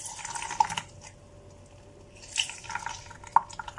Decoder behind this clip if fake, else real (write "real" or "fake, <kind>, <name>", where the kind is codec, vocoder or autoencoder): real